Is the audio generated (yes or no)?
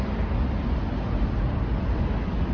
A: no